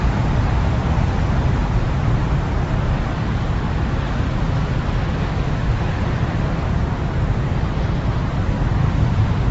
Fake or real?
fake